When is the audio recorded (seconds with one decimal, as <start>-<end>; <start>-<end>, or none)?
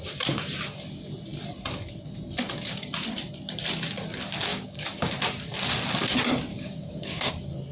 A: 0.0-4.5; 5.1-6.5; 7.3-7.7